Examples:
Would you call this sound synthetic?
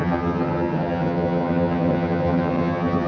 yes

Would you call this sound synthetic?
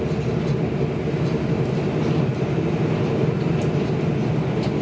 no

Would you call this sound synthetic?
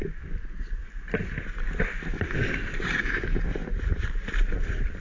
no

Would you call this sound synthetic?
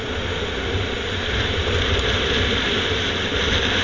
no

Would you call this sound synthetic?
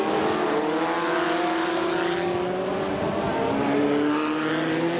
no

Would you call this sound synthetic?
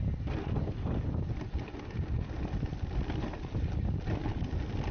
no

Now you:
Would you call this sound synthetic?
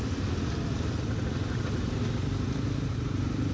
no